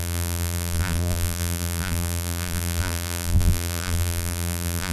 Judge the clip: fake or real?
fake